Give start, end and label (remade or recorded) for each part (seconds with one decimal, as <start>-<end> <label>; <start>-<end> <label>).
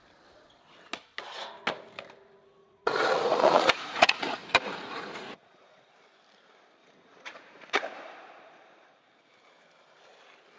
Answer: 0.0-2.6 recorded; 2.6-5.9 remade; 5.9-6.8 recorded; 6.8-9.0 remade; 9.0-10.6 recorded